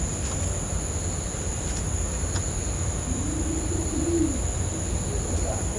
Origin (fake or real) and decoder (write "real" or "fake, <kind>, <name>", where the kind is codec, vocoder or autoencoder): real